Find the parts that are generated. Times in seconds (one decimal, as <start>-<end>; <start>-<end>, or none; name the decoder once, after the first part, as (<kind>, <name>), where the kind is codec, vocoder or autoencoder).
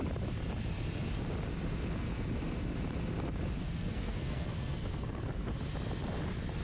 3.6-5.1 (codec, SNAC)